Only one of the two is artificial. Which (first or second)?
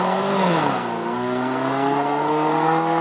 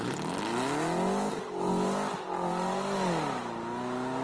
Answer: first